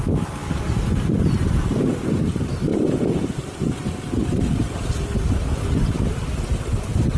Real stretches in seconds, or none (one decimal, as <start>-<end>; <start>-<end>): 0.0-7.2

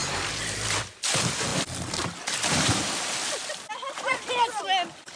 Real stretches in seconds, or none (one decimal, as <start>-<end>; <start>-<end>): 0.0-5.2

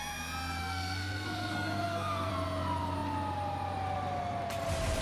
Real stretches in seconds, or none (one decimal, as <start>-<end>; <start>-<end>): 0.0-0.6; 2.3-5.0